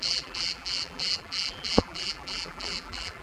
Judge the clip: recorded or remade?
remade